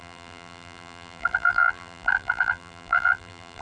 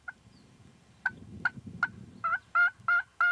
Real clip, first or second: second